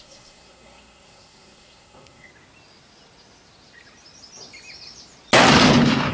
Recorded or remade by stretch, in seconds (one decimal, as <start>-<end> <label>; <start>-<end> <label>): 0.0-2.3 remade; 2.3-6.1 recorded

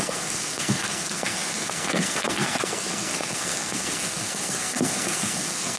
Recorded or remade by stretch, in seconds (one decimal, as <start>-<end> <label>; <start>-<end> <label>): 0.0-5.8 remade